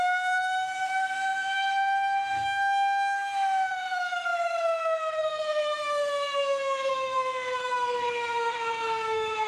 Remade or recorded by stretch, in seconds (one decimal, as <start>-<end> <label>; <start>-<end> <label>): 0.0-9.5 remade